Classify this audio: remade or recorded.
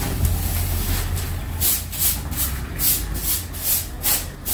recorded